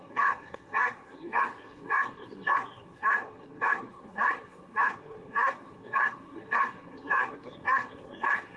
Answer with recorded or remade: remade